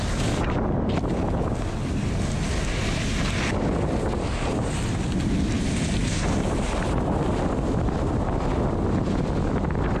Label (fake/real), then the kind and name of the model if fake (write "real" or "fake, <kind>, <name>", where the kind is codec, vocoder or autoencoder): real